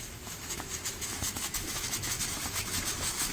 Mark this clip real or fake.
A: fake